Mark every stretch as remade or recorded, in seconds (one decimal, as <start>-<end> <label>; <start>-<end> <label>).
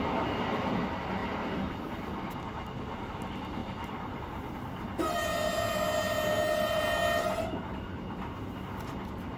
0.0-9.4 recorded